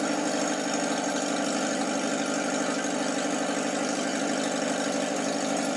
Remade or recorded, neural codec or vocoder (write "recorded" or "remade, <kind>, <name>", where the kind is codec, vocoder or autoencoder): recorded